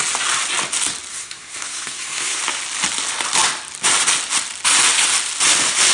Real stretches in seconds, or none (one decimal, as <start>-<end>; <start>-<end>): 0.0-1.1; 2.4-5.9